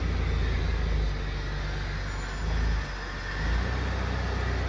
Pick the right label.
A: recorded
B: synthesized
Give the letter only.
A